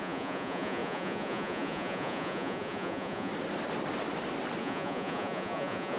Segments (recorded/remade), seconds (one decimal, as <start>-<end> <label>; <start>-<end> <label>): 0.0-3.3 remade; 3.3-4.6 recorded; 4.6-6.0 remade